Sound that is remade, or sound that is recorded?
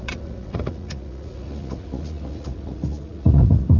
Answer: remade